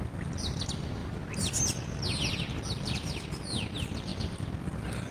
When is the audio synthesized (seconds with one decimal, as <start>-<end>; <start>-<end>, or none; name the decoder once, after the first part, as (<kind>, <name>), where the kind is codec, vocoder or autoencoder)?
none